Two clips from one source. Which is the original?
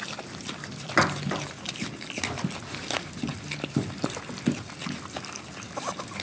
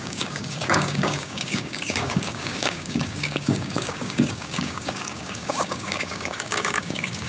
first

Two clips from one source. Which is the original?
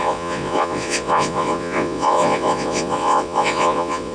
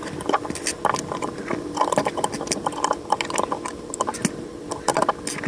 second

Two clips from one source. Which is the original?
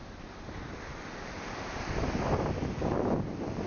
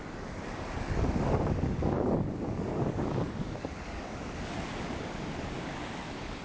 first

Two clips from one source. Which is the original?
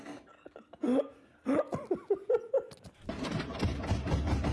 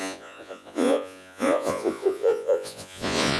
first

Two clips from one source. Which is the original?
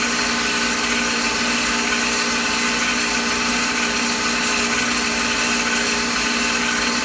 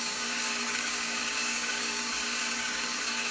first